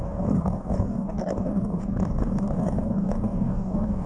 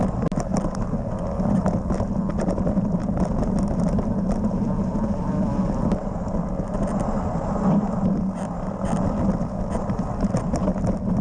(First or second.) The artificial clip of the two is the first